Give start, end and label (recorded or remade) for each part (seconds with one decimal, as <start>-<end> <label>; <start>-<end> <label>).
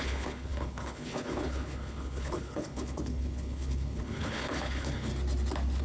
0.0-5.1 remade; 5.1-5.8 recorded